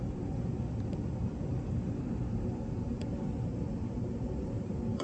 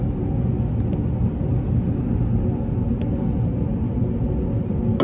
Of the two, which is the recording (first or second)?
second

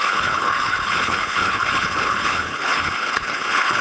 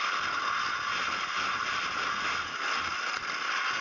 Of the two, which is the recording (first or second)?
second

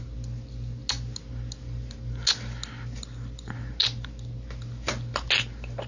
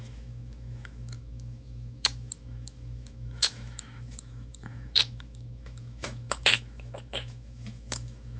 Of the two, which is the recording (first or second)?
first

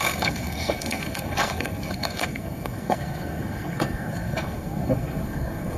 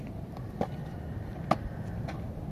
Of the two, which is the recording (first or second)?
second